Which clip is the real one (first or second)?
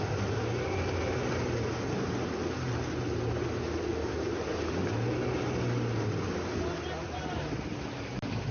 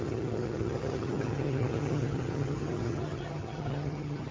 first